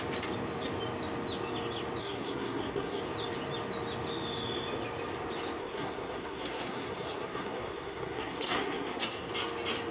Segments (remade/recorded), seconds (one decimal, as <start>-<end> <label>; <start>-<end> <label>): 0.0-2.0 recorded; 2.0-3.0 remade; 3.0-5.6 recorded; 5.6-9.3 remade; 9.3-9.9 recorded